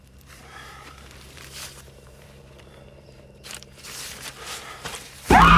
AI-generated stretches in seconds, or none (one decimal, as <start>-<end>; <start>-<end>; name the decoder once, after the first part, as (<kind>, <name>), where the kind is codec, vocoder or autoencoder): 0.0-5.6 (vocoder, BigVGAN v2)